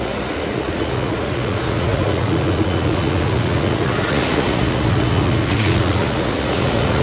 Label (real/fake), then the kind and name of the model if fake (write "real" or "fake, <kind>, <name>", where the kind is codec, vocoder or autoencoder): fake, vocoder, Vocos